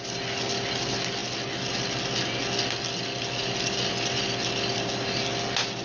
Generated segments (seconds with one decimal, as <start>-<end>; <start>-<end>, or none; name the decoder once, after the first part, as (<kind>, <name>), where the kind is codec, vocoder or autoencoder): none